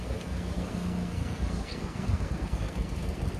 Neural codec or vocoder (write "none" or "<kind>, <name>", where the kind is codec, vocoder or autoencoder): codec, SNAC